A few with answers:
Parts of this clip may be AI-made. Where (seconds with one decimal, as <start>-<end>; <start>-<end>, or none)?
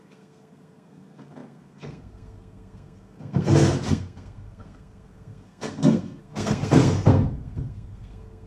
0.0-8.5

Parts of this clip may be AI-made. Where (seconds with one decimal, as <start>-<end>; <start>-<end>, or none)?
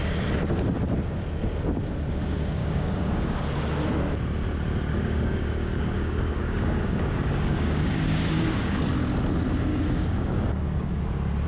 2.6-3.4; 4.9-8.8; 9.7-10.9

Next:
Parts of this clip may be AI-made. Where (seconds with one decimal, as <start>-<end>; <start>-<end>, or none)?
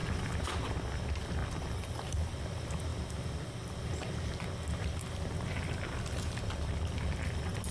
none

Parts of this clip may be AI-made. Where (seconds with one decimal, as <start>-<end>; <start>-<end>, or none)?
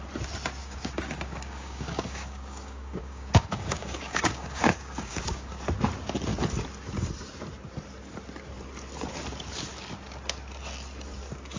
0.6-5.6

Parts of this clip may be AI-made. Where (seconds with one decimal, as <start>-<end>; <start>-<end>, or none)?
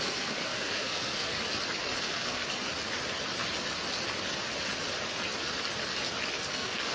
0.0-1.3; 2.0-2.4; 6.5-6.9